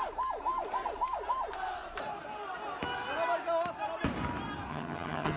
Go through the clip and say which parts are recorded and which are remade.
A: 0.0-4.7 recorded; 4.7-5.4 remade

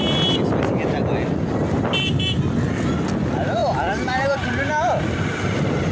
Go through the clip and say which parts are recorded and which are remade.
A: 0.0-5.9 recorded

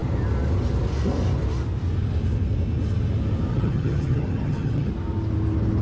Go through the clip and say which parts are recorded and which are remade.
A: 0.0-3.5 recorded; 3.5-4.9 remade; 4.9-5.8 recorded